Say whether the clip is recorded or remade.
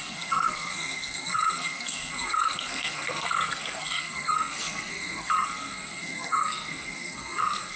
remade